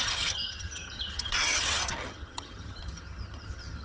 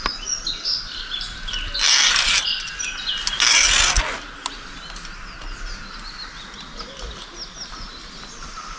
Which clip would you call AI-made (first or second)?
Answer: first